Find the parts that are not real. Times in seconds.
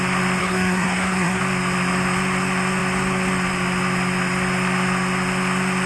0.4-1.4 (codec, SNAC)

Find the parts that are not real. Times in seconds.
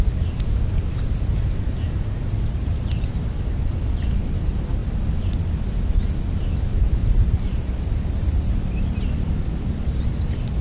7.0-9.5 (vocoder, BigVGAN v2)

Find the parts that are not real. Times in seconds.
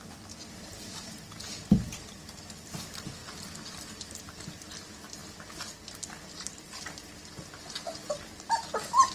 none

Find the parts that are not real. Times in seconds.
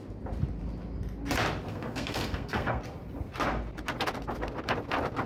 1.7-2.8 (codec, SNAC)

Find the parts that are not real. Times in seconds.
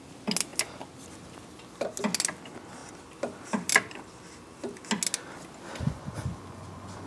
5.8-7.1 (vocoder, Vocos)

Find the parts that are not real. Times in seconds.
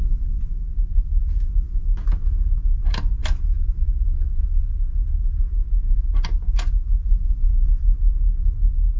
none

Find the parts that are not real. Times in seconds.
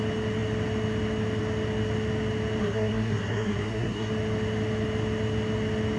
2.6-4.1 (codec, SNAC)